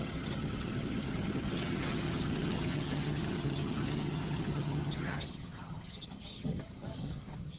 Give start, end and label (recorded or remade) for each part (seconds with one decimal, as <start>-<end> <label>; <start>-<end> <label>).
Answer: 0.0-7.6 remade